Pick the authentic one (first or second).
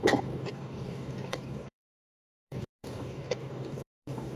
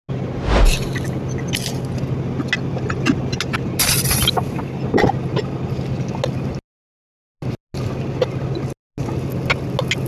second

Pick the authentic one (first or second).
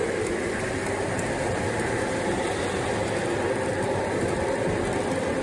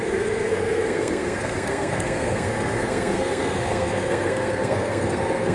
first